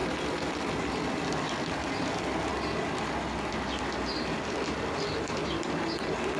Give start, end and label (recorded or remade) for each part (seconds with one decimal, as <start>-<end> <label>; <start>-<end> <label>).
0.0-6.4 recorded